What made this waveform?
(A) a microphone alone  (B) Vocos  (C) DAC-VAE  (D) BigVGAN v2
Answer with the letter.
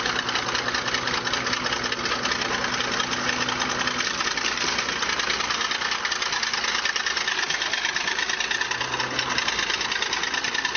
A